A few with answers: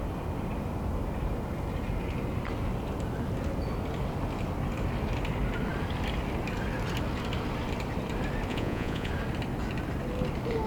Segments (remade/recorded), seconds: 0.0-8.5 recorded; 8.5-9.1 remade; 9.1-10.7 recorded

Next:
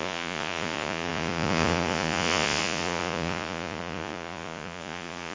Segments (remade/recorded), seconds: 0.0-5.3 remade

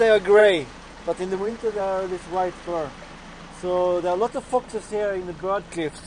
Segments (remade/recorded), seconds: 0.0-0.4 recorded; 0.4-1.8 remade; 1.8-6.1 recorded

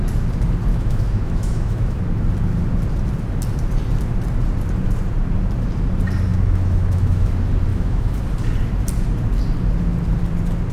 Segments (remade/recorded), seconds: 0.0-0.7 recorded; 0.7-2.0 remade; 2.0-6.3 recorded; 6.3-7.3 remade; 7.3-7.7 recorded; 7.7-8.2 remade; 8.2-10.7 recorded